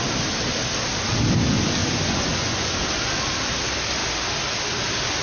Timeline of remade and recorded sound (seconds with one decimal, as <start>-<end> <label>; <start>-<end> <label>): 0.0-1.8 recorded; 1.8-2.8 remade; 2.8-5.2 recorded